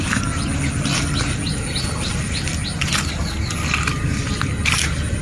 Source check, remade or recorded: recorded